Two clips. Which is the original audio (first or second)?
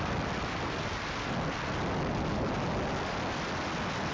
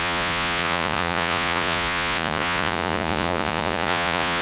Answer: first